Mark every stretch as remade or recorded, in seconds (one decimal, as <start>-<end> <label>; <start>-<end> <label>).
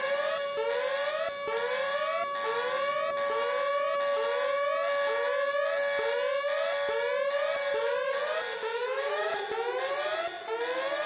0.0-8.6 recorded; 8.6-9.4 remade; 9.4-11.1 recorded